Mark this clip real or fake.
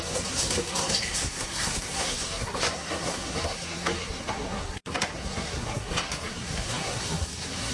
fake